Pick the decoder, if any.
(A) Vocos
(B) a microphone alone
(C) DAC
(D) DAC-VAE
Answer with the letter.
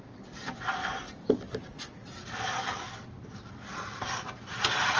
B